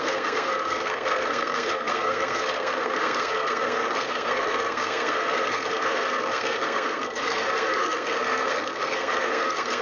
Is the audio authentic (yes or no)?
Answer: no